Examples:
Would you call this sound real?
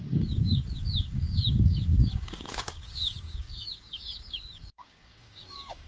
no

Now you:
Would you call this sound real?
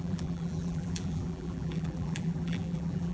no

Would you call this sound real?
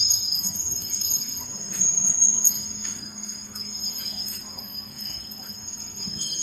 no